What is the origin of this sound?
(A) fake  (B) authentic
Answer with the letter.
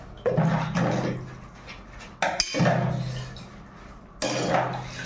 B